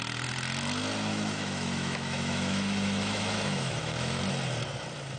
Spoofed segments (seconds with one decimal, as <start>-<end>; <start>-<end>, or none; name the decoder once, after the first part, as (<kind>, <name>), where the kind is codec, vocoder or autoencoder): 1.1-4.2 (autoencoder, DAC-VAE)